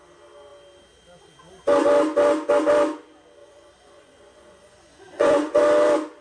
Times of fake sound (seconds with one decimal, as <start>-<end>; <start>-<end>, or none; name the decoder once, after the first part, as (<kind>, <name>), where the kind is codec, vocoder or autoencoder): 3.4-5.6 (vocoder, Vocos)

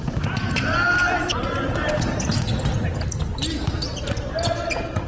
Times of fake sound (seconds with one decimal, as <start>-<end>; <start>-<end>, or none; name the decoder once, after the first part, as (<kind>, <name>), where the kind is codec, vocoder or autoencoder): none

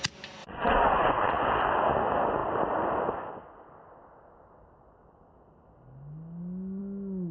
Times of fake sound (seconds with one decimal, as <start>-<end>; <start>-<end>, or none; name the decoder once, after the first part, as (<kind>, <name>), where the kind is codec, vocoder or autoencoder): 0.4-1.3 (vocoder, Vocos)

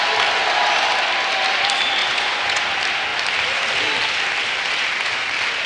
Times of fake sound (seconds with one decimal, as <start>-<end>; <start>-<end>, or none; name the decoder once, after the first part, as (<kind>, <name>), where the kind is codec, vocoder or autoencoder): 2.0-2.6 (vocoder, Vocos)

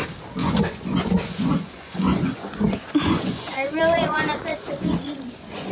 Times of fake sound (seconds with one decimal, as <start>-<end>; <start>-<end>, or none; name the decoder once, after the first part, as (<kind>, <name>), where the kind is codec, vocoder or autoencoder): 0.4-3.8 (vocoder, Vocos); 4.5-5.7

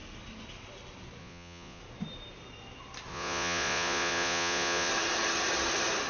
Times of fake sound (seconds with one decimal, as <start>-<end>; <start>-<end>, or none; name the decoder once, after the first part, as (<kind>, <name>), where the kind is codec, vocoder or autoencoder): 1.2-1.8 (vocoder, Vocos); 3.1-4.9

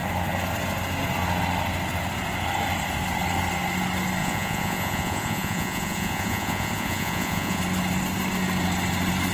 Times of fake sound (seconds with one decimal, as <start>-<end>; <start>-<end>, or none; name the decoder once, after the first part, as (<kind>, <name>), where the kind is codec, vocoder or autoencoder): 4.2-7.6 (vocoder, Vocos)

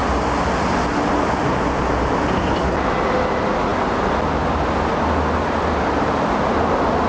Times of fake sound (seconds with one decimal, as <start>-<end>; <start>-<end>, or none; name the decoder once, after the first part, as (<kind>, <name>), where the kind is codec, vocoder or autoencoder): none